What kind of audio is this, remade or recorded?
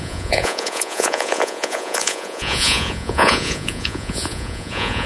remade